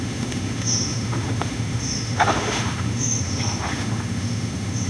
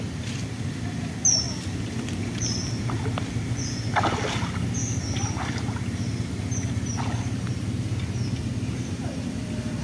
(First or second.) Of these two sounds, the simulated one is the first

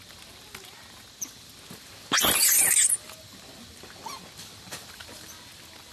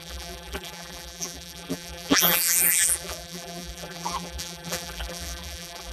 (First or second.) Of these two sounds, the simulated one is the second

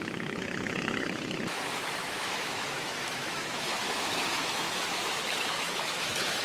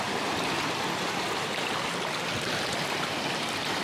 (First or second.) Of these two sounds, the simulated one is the first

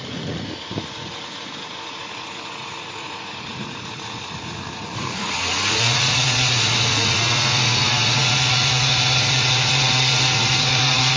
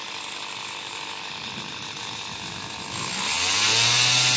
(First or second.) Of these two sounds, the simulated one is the first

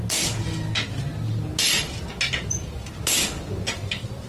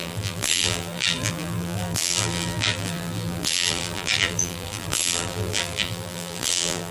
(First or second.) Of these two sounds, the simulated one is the second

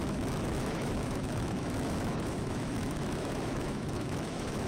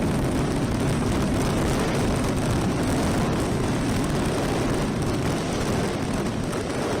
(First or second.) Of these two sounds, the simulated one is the first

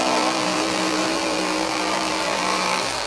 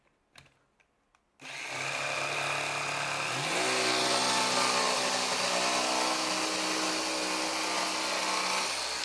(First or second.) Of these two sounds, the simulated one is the first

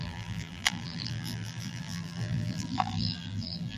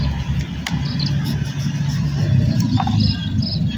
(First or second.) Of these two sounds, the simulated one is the first